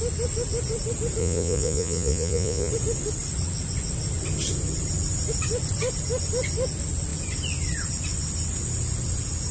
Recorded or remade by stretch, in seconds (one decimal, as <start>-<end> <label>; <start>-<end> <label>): 0.0-1.2 recorded; 1.2-2.7 remade; 2.7-9.5 recorded